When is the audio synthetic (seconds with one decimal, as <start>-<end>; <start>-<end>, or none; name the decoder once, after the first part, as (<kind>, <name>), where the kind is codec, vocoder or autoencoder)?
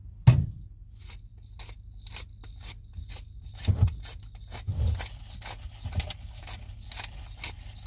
none